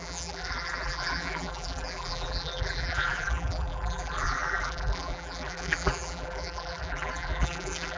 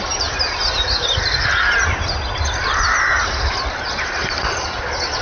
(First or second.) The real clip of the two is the second